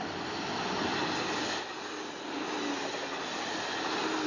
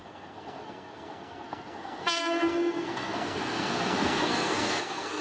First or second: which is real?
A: first